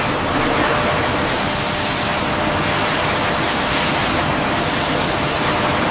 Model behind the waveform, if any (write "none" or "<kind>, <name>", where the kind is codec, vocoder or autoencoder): none